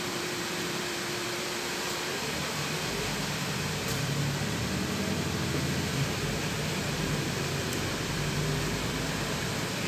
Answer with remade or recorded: remade